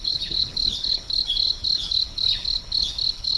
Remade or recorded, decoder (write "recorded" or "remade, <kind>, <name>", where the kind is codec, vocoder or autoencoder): remade, codec, HILCodec